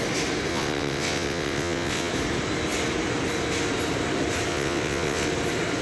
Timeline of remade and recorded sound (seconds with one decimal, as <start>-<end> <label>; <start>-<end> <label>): 0.0-0.5 recorded; 0.5-2.1 remade; 2.1-4.5 recorded; 4.5-5.3 remade; 5.3-5.8 recorded